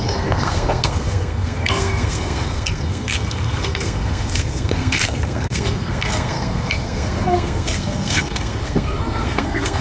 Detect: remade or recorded remade